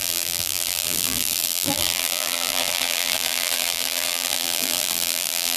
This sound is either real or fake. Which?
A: fake